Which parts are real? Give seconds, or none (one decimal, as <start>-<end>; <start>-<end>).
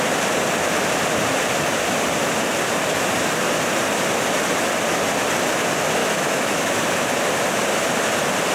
0.0-6.0; 6.8-8.5